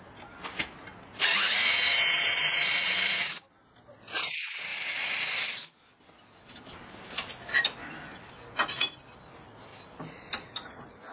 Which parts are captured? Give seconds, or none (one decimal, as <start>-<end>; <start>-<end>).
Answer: 0.0-2.7; 3.4-9.7; 10.4-11.1

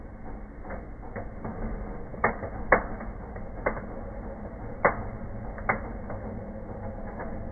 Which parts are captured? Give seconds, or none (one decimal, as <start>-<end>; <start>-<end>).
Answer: 0.0-7.5

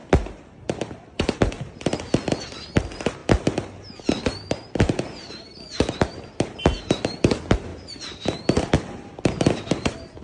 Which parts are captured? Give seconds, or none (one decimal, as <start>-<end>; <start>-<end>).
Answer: 0.0-0.6; 3.2-5.3